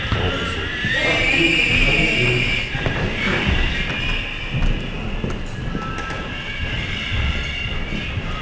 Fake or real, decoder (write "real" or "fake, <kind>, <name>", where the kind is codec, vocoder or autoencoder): real